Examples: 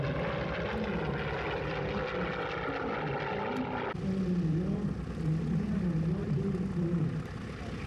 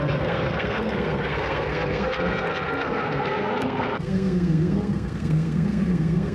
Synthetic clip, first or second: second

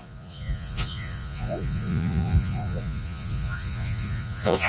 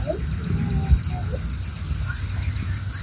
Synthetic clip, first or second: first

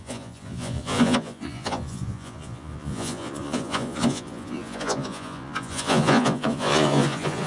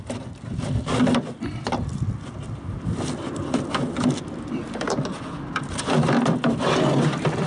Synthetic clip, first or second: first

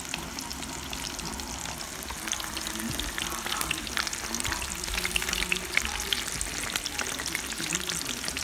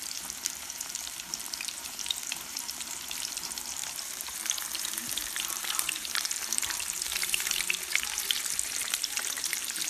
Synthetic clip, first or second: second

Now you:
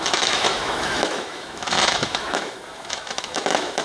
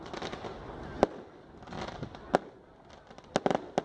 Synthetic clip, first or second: first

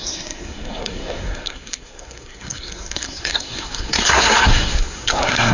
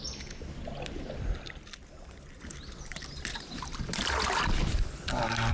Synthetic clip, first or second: first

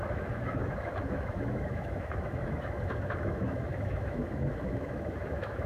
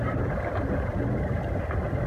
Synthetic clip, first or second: first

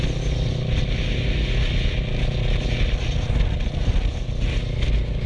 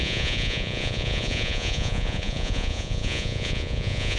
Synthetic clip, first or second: second